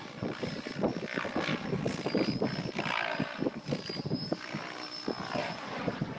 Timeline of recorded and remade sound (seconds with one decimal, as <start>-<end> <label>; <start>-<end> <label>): 0.0-5.4 recorded; 5.4-6.2 remade